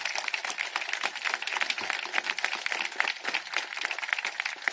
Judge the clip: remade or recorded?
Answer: recorded